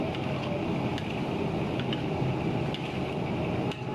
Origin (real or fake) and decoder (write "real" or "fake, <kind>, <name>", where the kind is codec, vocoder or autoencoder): real